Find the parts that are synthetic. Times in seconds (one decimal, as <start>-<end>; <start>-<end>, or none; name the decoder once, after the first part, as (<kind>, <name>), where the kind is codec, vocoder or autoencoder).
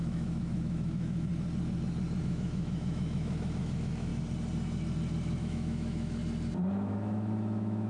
0.0-1.3 (autoencoder, DAC-VAE); 2.2-4.1; 5.4-6.2; 6.7-7.9